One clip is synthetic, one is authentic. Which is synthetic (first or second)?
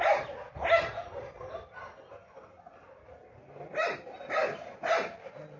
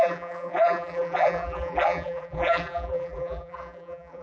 second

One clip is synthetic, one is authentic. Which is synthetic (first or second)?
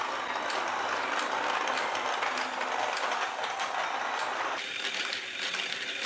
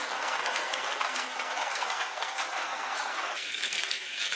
second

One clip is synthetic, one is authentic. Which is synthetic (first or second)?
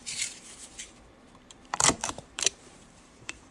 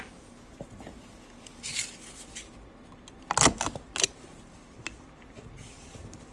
first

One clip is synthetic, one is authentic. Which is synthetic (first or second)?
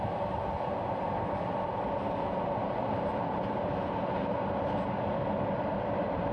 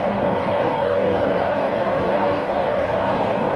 second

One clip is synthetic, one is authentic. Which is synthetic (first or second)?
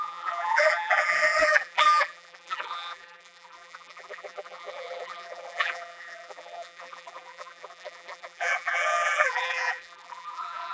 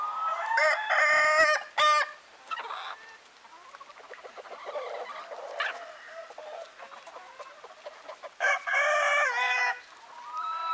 first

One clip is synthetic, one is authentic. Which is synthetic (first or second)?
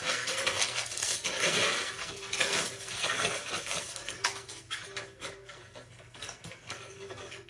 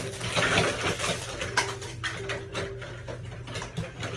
first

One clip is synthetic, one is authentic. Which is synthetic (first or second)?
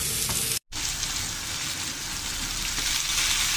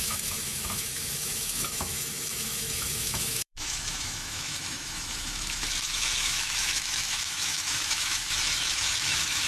second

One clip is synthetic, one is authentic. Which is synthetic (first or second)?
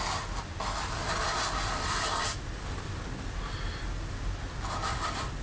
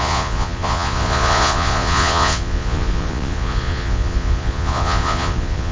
second